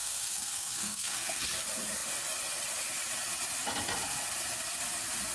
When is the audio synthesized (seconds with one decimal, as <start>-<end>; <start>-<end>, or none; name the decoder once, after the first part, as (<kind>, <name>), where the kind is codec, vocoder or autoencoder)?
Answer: 0.0-1.4 (codec, SNAC)